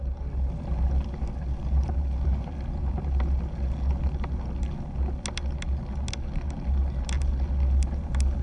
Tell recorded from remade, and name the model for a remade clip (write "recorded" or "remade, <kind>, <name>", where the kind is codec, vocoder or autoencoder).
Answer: recorded